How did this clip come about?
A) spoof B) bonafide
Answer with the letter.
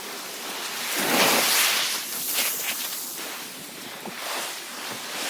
B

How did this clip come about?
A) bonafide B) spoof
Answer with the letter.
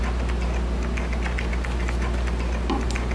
A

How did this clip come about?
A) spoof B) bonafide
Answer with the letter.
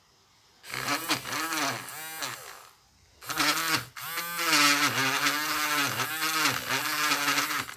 B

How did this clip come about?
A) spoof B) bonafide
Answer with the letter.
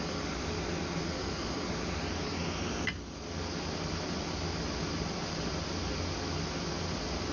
B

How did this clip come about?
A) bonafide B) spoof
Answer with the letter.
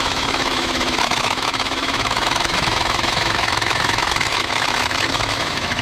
B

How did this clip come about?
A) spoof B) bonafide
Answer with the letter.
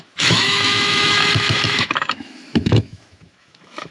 A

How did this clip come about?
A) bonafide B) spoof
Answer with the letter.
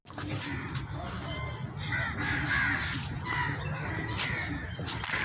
A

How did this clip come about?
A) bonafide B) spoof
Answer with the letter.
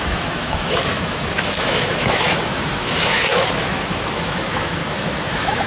B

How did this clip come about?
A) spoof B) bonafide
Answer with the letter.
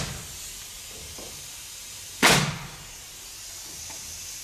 B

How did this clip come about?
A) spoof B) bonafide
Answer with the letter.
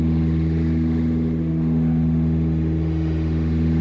A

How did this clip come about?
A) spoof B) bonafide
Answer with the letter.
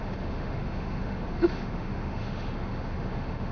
A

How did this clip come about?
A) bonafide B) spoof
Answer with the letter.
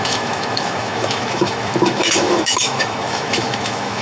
B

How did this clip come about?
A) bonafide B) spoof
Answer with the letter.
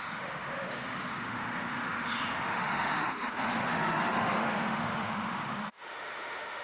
B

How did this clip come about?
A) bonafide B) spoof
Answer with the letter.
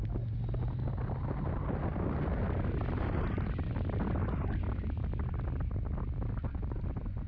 A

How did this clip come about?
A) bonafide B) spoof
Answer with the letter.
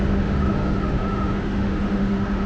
B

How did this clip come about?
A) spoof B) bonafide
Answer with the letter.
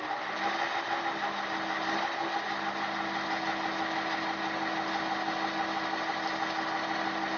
B